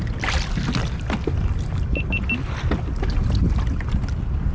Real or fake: real